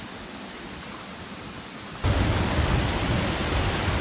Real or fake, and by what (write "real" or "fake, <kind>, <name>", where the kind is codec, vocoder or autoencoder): real